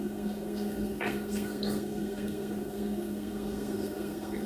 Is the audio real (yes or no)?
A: no